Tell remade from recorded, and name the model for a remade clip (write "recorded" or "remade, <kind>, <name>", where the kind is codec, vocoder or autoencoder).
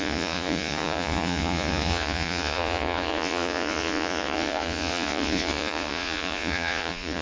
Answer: remade, vocoder, Vocos